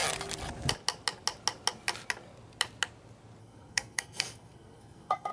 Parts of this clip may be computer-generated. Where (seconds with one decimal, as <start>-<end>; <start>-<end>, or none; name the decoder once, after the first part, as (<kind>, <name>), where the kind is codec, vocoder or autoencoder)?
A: 3.4-5.3 (codec, SNAC)